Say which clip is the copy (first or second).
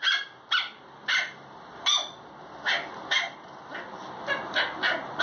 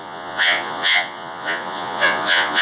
second